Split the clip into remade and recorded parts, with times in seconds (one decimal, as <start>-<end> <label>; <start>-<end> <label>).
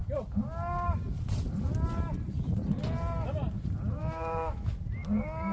0.0-4.0 recorded; 4.0-4.7 remade; 4.7-5.5 recorded